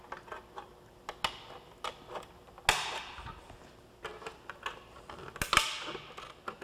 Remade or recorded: recorded